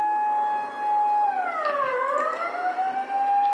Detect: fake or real real